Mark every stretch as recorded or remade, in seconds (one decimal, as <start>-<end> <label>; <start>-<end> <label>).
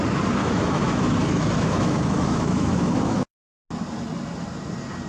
0.0-0.4 recorded; 0.4-3.5 remade; 3.5-5.1 recorded